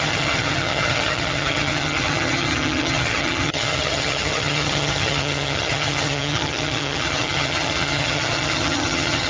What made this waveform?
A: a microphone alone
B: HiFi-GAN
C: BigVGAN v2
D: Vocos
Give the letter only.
B